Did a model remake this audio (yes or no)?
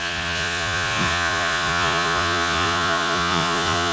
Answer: yes